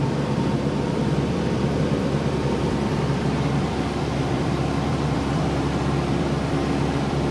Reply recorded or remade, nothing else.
remade